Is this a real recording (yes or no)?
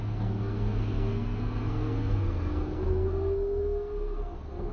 no